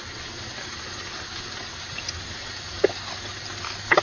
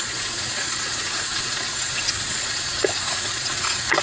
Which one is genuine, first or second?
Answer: first